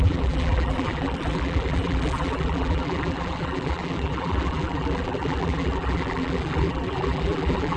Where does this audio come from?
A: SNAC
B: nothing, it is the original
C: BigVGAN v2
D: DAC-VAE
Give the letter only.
C